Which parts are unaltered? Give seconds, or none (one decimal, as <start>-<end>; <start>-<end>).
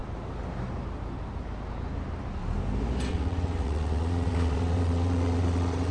0.0-3.1